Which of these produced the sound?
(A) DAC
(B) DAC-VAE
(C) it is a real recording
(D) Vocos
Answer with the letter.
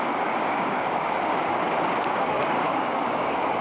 A